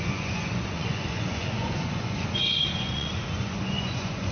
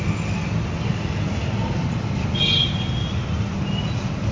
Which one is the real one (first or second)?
second